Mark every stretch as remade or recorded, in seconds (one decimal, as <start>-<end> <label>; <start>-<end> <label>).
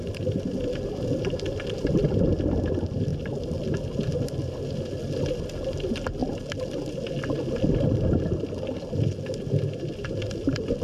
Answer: 0.0-10.8 recorded